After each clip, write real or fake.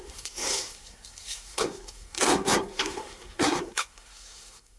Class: fake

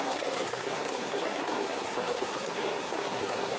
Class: fake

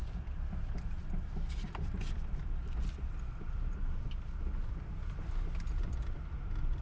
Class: real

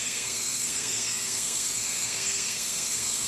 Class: fake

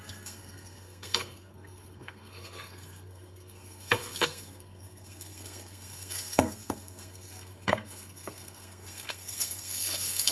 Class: fake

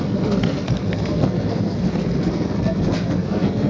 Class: fake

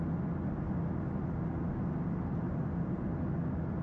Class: real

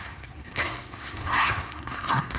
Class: fake